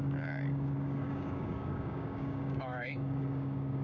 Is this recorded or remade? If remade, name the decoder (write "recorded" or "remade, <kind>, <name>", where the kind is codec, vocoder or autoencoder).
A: remade, codec, DAC